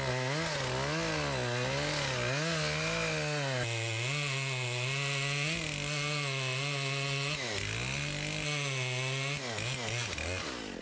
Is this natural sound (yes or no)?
yes